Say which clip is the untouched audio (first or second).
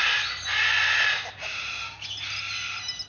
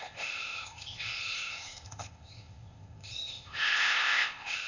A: first